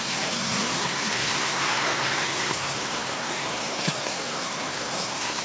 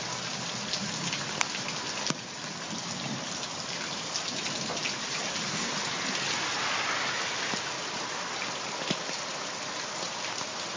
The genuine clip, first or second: second